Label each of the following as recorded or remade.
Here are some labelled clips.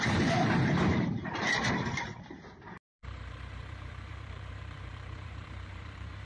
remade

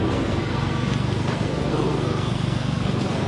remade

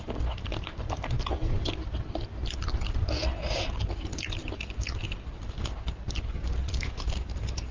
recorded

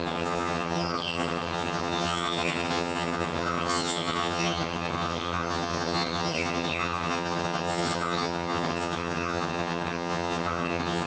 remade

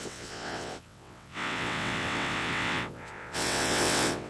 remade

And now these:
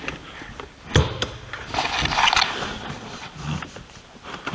recorded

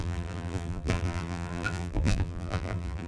remade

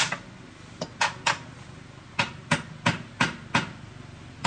recorded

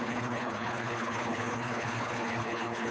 remade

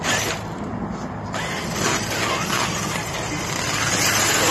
recorded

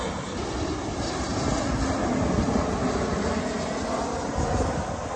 recorded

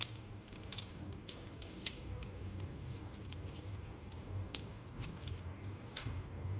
remade